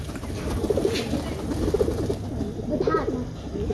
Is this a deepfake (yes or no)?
no